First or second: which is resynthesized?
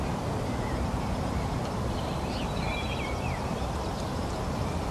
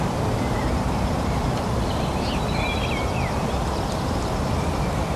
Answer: first